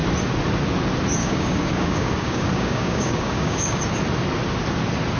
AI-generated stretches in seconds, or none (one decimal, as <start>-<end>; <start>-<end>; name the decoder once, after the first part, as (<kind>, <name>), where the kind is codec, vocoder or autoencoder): 1.2-3.8 (codec, DAC)